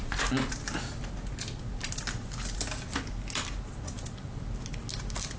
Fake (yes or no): no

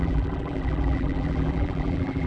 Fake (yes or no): yes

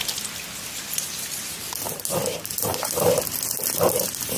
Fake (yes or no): no